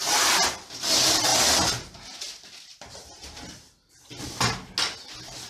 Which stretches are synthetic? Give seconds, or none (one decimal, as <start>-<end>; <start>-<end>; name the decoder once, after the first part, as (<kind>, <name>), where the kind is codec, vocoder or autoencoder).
none